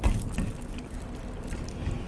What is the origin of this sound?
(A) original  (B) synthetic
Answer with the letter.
A